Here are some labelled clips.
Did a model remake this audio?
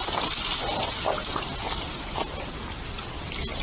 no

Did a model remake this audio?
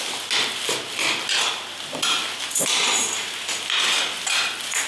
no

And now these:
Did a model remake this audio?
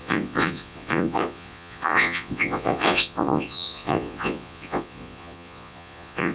yes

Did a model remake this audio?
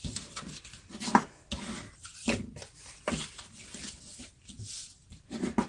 no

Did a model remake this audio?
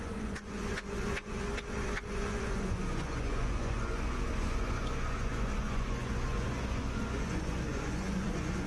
yes